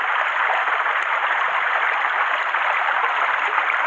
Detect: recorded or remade recorded